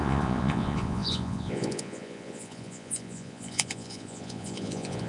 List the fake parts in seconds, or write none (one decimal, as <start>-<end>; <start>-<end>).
0.0-5.1